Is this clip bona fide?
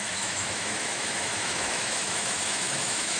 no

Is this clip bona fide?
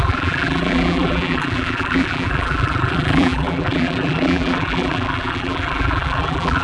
no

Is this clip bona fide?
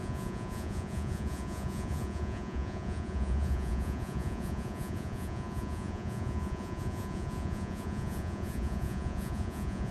no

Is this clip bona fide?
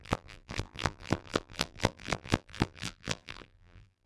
no